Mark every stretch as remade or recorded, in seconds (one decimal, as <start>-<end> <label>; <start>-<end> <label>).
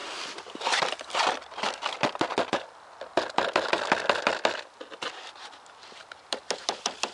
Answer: 0.0-2.3 remade; 2.3-5.1 recorded; 5.1-7.1 remade